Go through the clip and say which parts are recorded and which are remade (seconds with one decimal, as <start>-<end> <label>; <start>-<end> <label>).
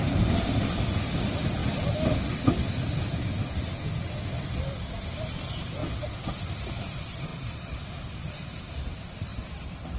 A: 0.0-1.6 remade; 1.6-4.9 recorded; 4.9-5.8 remade; 5.8-6.6 recorded; 6.6-7.3 remade; 7.3-7.9 recorded; 7.9-10.0 remade